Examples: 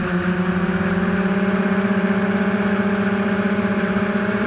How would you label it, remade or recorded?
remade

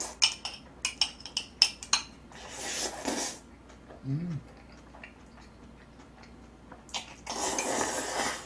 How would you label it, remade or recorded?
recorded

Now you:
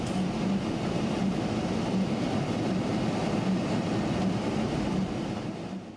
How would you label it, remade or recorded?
recorded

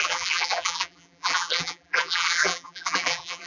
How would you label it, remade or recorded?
remade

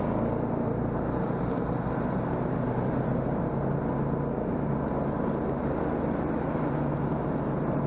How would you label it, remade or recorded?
recorded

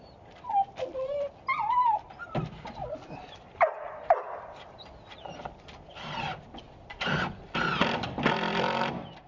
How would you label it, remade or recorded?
remade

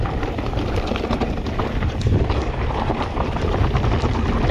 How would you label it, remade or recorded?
remade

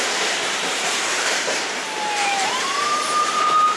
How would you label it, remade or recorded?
remade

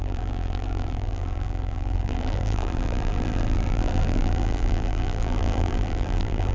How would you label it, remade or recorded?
remade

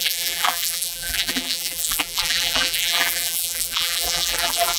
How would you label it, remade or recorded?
remade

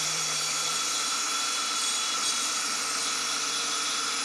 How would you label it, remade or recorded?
remade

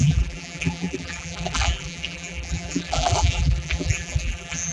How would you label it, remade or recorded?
remade